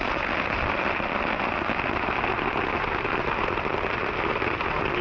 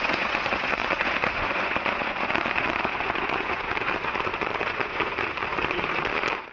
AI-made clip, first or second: second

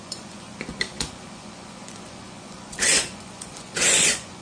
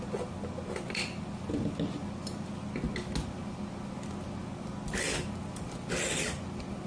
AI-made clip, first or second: first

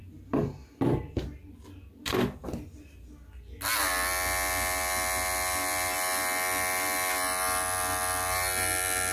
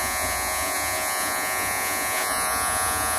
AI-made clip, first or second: second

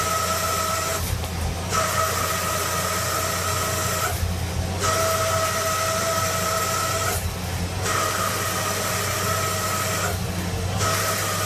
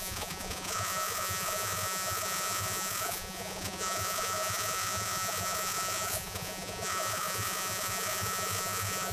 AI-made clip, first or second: second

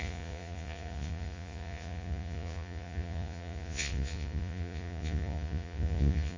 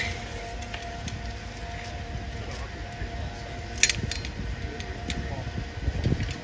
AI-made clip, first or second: first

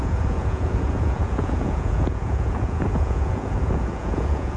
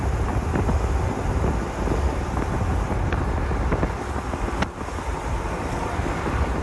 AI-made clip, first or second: first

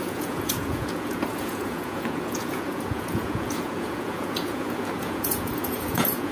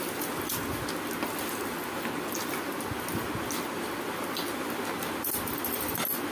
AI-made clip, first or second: first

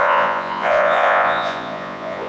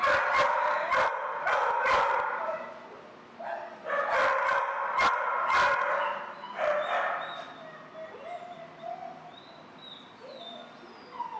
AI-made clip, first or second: first